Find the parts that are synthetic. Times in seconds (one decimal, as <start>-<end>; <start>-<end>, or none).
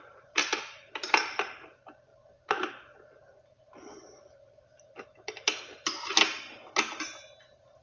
none